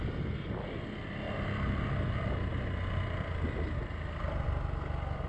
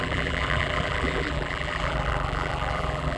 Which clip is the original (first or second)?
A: first